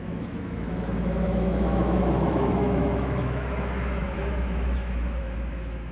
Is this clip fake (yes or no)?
yes